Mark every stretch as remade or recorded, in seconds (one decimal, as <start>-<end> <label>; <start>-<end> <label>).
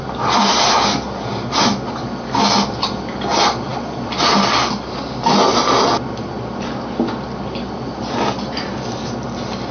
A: 0.0-9.7 recorded